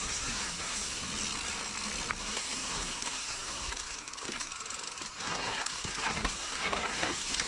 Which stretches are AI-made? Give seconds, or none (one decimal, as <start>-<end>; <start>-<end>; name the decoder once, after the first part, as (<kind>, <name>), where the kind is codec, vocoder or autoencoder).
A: 0.0-1.1 (codec, SNAC); 2.2-4.5; 5.2-7.5